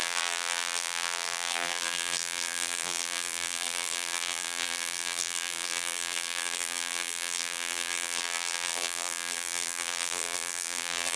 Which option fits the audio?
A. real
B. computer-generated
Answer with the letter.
B